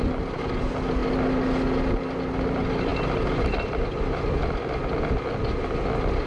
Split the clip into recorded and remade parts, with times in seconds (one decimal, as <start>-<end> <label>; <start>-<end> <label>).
0.0-6.3 recorded

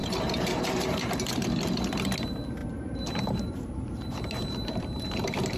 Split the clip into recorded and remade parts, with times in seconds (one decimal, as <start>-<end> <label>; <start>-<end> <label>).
0.0-1.1 remade; 1.1-2.6 recorded; 2.6-5.6 remade

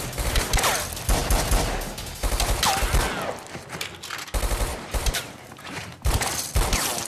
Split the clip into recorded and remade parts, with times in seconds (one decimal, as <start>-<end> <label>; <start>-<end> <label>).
0.0-4.7 recorded; 4.7-6.1 remade; 6.1-7.1 recorded

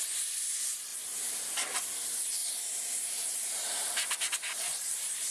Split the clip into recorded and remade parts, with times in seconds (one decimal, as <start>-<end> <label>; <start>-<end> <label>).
0.0-0.9 recorded; 0.9-1.4 remade; 1.4-2.4 recorded; 2.4-5.3 remade

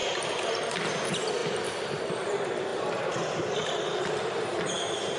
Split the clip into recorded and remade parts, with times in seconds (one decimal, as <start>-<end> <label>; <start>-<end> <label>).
0.0-0.5 remade; 0.5-1.4 recorded; 1.4-2.3 remade; 2.3-2.7 recorded; 2.7-4.0 remade; 4.0-5.2 recorded

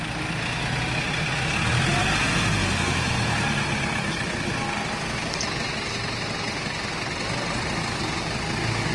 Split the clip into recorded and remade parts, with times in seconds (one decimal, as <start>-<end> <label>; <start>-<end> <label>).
0.0-8.9 recorded

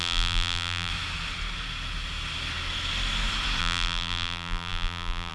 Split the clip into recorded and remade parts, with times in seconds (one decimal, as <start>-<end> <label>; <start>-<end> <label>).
0.0-0.9 remade; 0.9-3.6 recorded; 3.6-5.3 remade